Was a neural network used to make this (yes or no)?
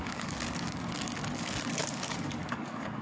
yes